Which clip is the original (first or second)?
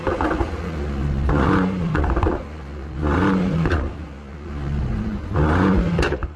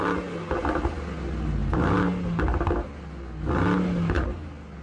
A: second